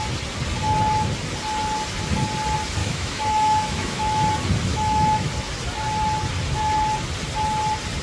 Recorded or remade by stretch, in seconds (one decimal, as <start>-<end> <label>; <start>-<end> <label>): 0.0-2.8 recorded; 2.8-4.2 remade; 4.2-4.7 recorded; 4.7-5.3 remade; 5.3-8.0 recorded